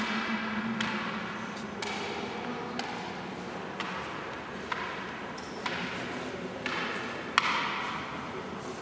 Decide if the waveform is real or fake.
real